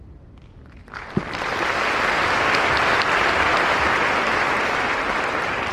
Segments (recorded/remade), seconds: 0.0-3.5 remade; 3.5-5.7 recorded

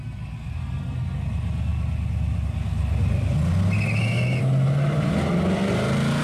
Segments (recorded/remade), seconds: 0.0-6.2 recorded